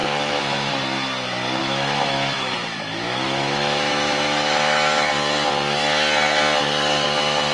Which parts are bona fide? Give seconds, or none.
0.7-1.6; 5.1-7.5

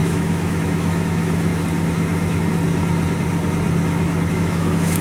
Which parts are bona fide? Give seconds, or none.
1.5-4.3

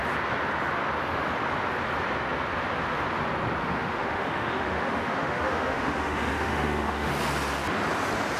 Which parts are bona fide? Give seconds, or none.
0.0-3.6; 7.1-8.4